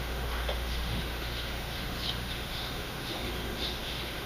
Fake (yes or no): yes